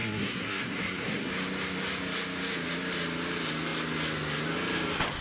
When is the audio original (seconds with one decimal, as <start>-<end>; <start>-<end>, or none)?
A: 1.3-5.2